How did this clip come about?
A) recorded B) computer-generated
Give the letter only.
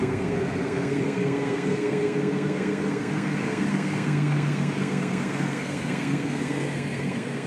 B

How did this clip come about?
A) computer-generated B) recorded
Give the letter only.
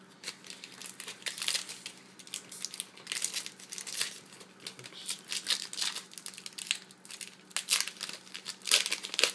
B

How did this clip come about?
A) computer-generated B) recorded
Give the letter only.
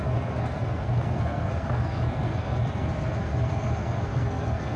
A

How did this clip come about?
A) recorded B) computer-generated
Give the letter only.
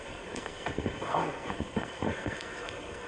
B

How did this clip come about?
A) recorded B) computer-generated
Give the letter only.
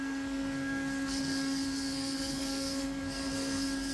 B